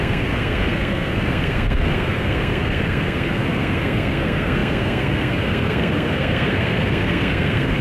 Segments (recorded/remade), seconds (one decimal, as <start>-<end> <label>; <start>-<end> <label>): 0.0-7.8 remade